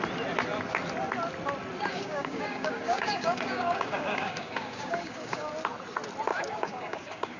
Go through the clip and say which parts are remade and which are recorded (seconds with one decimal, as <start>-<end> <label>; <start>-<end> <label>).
0.0-1.9 recorded; 1.9-5.5 remade; 5.5-6.3 recorded; 6.3-7.4 remade